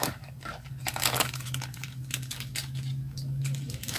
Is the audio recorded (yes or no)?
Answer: no